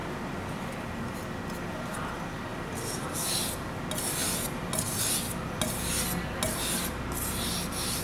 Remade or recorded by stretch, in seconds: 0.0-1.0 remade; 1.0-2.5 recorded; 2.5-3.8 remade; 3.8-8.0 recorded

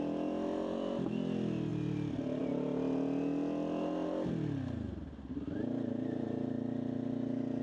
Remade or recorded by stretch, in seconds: 0.0-7.6 recorded

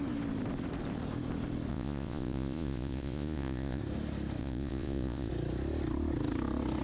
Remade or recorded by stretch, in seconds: 0.0-1.7 recorded; 1.7-3.8 remade; 3.8-4.4 recorded; 4.4-5.3 remade; 5.3-6.8 recorded